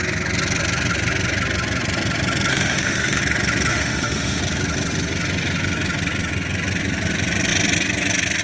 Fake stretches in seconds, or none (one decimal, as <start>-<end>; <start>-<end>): 2.5-3.2; 3.7-4.4